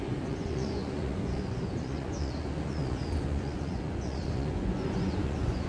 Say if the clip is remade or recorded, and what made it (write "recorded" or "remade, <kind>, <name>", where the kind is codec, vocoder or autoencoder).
remade, vocoder, Vocos